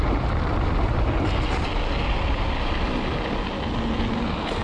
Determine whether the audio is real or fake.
real